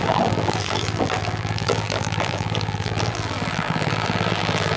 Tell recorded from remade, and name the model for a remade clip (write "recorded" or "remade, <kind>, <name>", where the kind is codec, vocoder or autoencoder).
remade, vocoder, BigVGAN v2